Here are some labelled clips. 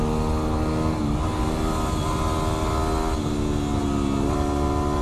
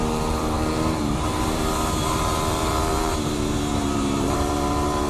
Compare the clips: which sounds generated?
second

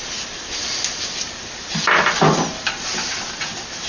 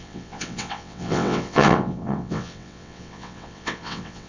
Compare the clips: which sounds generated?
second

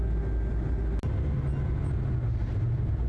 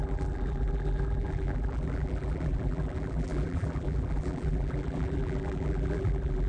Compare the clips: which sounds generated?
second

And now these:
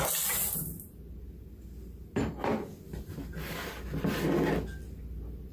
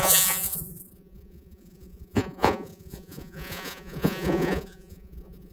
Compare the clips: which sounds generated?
second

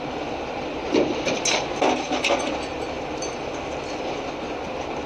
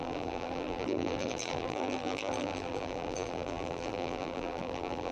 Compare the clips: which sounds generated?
second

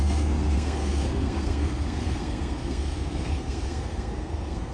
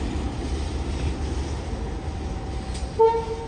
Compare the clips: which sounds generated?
first